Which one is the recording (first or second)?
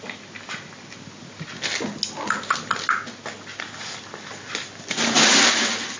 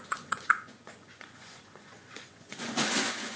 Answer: first